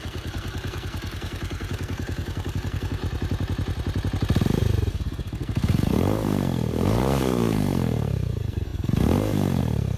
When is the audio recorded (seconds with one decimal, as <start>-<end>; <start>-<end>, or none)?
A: 3.0-4.9